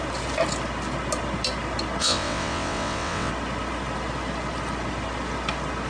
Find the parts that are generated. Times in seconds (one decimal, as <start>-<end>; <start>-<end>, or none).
2.0-3.3

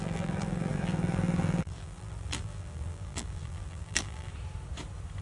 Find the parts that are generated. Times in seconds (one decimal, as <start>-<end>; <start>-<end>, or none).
0.0-4.3

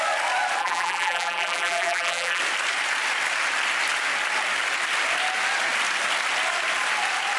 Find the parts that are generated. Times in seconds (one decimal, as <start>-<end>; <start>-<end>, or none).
0.6-2.4

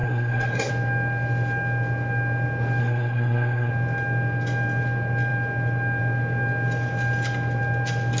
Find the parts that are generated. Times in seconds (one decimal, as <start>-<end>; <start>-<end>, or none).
0.0-0.7; 2.8-3.7

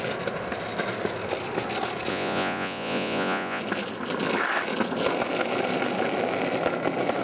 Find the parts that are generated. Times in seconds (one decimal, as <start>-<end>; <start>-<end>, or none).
2.1-3.6

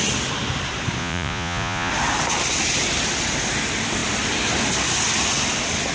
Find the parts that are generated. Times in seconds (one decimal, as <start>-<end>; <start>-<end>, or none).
1.0-1.9

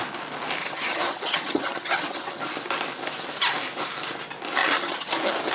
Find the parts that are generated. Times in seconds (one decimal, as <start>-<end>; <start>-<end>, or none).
0.6-2.4; 4.6-5.1

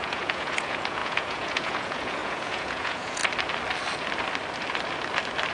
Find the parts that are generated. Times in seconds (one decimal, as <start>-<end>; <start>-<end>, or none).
0.0-3.2